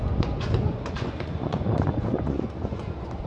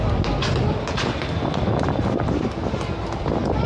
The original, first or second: second